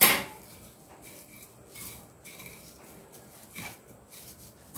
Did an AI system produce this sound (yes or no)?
no